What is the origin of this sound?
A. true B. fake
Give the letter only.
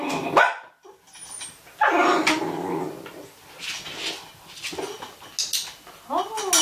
A